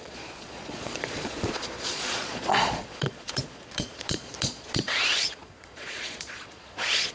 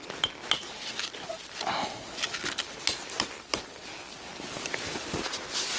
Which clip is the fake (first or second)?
first